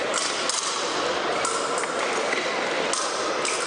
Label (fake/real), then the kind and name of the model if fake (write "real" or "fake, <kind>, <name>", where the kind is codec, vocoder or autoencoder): real